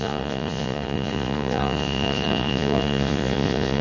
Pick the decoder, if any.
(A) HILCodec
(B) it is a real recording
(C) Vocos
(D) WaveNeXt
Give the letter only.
C